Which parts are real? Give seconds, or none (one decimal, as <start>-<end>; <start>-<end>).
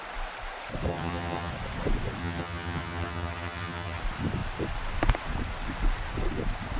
0.0-0.9; 1.5-2.2; 4.0-6.8